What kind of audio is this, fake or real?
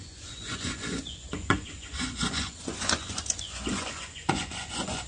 fake